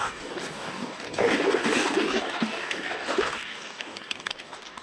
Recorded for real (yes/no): no